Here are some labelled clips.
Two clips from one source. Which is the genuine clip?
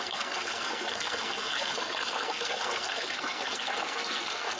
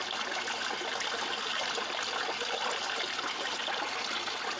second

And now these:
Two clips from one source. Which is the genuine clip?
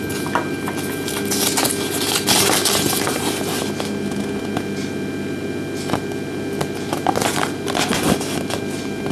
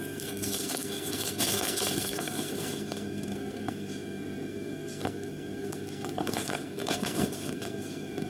first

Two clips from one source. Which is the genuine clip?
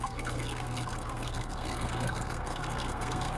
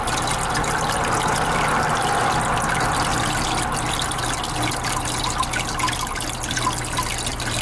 second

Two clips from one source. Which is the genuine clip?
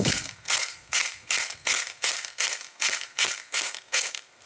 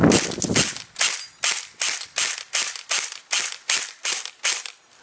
second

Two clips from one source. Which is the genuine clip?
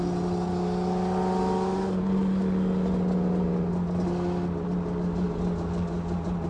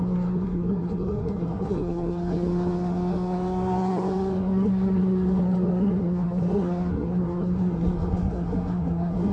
first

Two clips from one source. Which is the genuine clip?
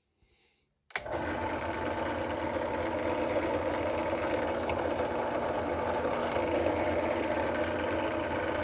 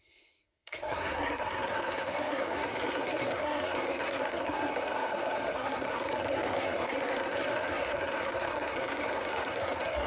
first